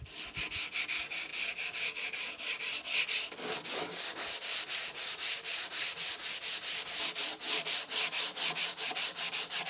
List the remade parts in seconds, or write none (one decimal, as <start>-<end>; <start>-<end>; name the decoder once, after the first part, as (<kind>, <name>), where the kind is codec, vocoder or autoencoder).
4.8-6.4 (vocoder, Vocos)